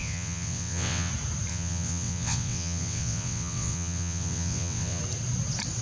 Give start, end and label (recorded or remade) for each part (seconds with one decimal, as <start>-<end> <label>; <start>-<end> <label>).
0.0-1.1 remade; 1.1-1.5 recorded; 1.5-5.0 remade; 5.0-5.8 recorded